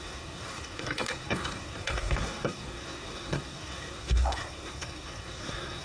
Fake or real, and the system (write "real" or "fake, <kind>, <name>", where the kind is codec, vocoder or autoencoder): fake, codec, SNAC